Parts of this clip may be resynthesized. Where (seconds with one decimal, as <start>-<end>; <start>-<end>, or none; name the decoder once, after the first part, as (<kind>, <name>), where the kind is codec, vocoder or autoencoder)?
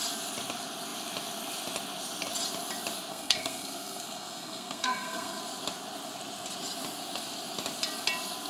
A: 3.1-5.4 (codec, SNAC)